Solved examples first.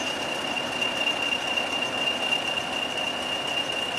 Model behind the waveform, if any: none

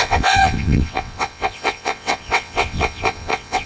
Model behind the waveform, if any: vocoder, WaveNeXt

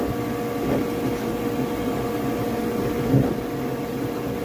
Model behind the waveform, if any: none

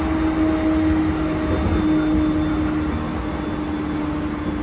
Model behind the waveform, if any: none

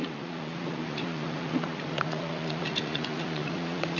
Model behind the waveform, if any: vocoder, Vocos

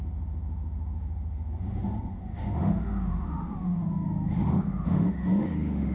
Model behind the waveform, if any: autoencoder, DAC-VAE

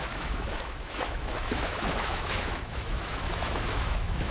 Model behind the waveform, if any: autoencoder, DAC-VAE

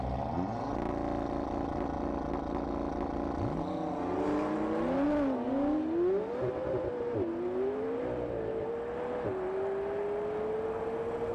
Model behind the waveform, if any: none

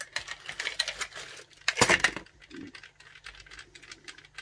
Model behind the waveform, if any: none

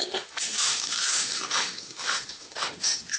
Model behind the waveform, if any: autoencoder, DAC-VAE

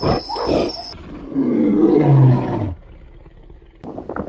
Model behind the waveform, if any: none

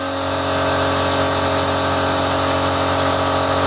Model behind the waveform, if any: none